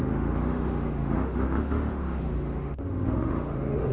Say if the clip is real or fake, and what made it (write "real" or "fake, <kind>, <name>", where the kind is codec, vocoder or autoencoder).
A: fake, autoencoder, DAC-VAE